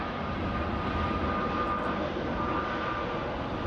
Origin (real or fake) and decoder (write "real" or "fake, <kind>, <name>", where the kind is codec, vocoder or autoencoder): real